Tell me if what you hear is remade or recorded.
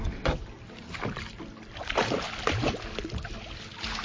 recorded